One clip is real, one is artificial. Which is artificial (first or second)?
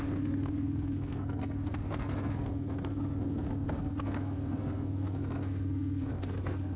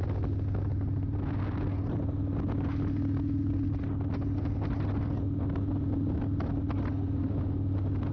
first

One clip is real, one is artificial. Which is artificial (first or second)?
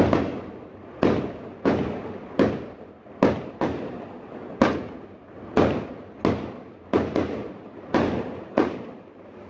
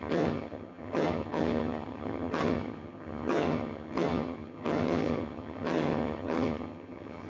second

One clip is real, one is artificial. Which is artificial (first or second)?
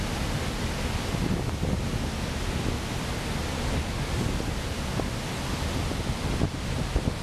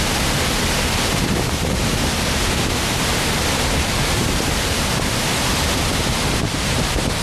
second